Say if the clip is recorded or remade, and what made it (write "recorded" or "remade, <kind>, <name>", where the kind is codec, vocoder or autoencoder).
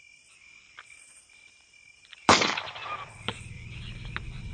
remade, vocoder, BigVGAN v2